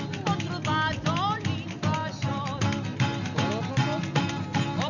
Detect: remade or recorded recorded